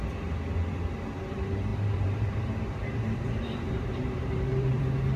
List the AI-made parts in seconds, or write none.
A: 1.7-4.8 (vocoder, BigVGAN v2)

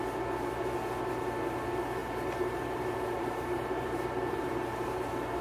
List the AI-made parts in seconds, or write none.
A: 2.0-5.4 (vocoder, BigVGAN v2)

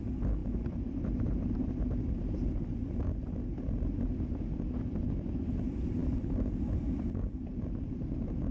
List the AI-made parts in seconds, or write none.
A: 0.4-2.1 (vocoder, BigVGAN v2)

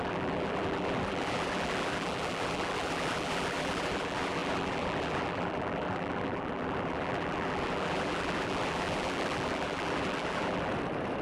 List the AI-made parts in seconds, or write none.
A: 0.0-10.7 (vocoder, BigVGAN v2)

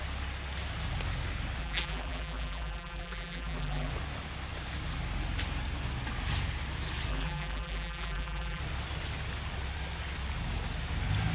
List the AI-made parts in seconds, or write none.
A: 1.6-3.9 (vocoder, BigVGAN v2); 7.1-8.6

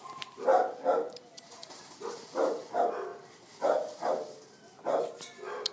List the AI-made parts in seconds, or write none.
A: none

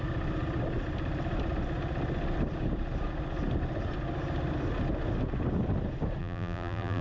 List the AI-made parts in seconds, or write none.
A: 6.2-7.0 (vocoder, BigVGAN v2)